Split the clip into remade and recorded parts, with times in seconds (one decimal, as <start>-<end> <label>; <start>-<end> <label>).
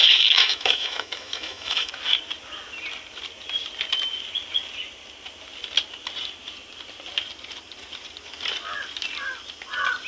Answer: 0.0-1.9 remade; 1.9-10.1 recorded